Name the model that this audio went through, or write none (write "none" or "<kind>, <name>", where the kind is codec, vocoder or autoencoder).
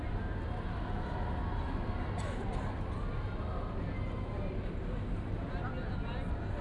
none